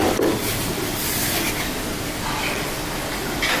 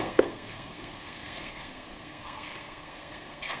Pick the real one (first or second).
first